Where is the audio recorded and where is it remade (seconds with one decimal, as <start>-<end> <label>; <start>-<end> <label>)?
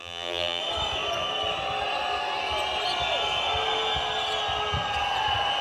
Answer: 0.0-0.6 remade; 0.6-5.6 recorded